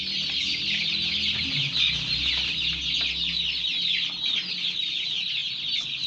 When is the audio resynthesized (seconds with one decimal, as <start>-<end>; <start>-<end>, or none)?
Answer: none